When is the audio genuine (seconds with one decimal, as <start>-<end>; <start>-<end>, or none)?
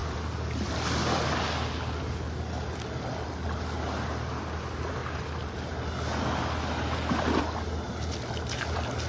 0.0-9.1